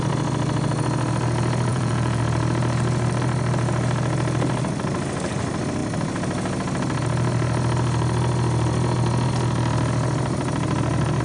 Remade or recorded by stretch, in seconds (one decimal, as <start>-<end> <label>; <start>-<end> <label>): 0.0-1.7 recorded; 1.7-2.2 remade; 2.2-11.2 recorded